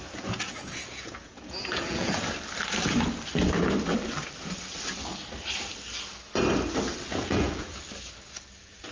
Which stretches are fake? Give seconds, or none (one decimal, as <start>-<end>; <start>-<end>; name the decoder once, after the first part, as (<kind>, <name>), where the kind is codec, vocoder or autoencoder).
0.0-2.1 (vocoder, Vocos); 7.1-7.8